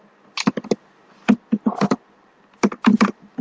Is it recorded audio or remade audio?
recorded